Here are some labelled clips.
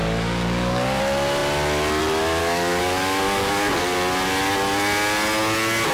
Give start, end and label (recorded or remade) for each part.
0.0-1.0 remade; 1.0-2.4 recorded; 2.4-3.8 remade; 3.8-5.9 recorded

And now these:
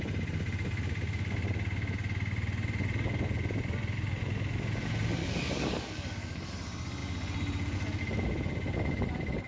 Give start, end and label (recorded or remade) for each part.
0.0-5.2 recorded; 5.2-6.5 remade; 6.5-9.5 recorded

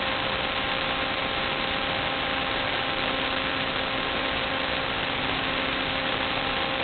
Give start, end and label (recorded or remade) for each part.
0.0-6.8 recorded

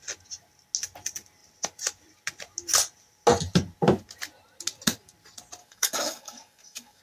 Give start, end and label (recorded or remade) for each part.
0.0-5.6 recorded; 5.6-7.0 remade

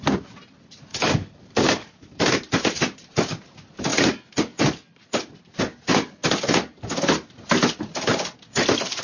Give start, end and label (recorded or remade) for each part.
0.0-0.9 recorded; 0.9-2.2 remade; 2.2-9.0 recorded

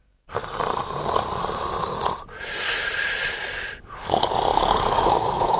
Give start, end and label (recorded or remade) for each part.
0.0-0.4 remade; 0.4-3.8 recorded; 3.8-5.6 remade

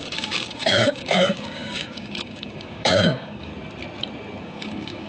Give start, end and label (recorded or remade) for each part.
0.0-3.5 remade; 3.5-4.4 recorded; 4.4-5.1 remade